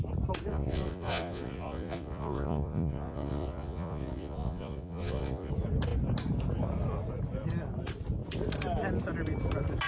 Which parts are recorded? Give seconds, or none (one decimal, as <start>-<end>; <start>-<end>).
0.0-0.5; 5.5-9.9